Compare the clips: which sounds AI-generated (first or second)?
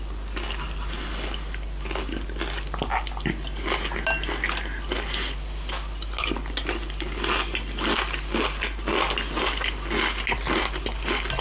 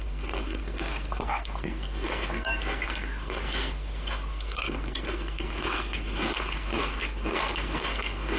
second